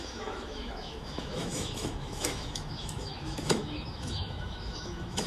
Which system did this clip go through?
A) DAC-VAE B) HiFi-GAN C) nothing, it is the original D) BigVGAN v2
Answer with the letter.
A